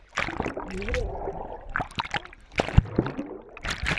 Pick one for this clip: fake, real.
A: real